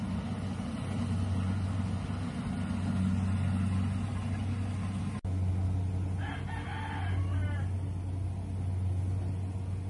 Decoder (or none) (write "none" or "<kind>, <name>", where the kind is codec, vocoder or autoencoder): none